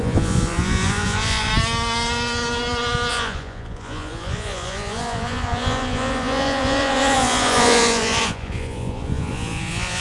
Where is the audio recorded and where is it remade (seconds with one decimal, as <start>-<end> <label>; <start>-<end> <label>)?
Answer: 0.0-1.5 remade; 1.5-3.1 recorded; 3.1-10.0 remade